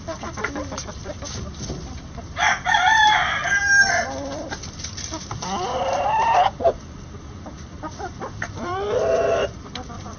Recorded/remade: remade